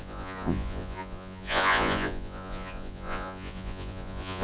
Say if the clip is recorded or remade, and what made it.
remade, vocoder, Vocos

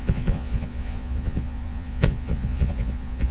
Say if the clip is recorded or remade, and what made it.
remade, vocoder, Vocos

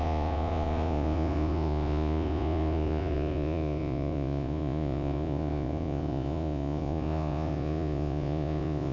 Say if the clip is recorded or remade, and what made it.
remade, vocoder, Vocos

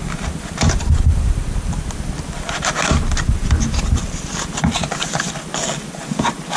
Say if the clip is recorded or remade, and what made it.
recorded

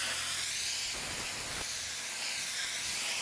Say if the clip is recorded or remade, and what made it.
recorded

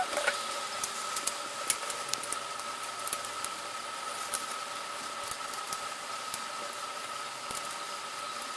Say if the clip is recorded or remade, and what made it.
recorded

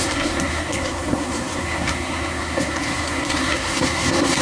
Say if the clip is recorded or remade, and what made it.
remade, codec, SNAC